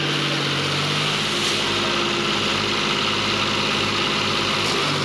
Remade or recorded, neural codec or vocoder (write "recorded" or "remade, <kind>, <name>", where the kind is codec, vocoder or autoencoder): recorded